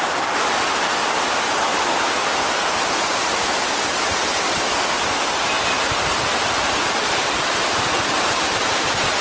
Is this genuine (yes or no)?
yes